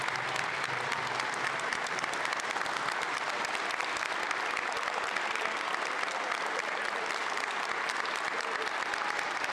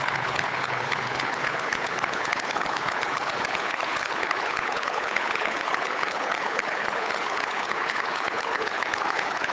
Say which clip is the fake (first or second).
second